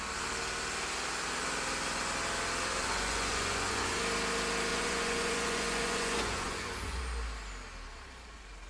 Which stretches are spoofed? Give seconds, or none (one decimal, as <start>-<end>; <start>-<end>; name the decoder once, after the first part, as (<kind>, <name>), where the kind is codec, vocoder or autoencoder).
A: 2.8-4.0 (vocoder, Vocos); 4.7-7.0